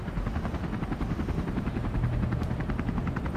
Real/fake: real